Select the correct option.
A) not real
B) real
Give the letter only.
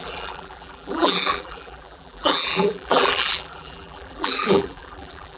A